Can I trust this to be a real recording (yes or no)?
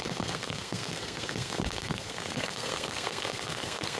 no